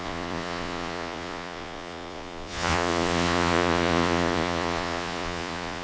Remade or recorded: remade